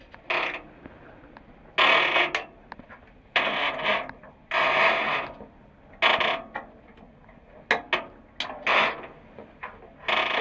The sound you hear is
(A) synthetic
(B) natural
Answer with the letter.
B